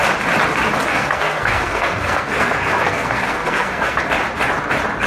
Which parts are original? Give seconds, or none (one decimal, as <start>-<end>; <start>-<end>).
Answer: 0.0-0.9; 4.0-5.1